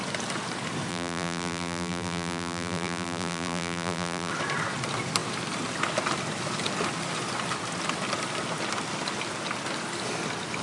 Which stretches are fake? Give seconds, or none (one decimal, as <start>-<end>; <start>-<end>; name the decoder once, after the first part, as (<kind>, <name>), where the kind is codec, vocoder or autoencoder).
0.9-4.3 (vocoder, BigVGAN v2)

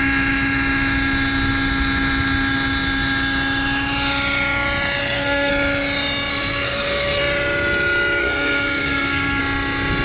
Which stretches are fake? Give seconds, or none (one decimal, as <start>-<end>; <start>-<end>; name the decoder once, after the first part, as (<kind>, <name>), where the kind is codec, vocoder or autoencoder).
5.0-5.5 (codec, SNAC); 6.3-7.2; 8.2-9.4

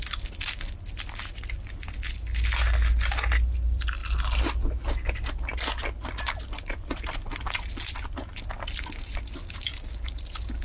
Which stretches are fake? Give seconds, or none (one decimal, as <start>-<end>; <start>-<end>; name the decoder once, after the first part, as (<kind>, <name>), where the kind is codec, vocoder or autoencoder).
none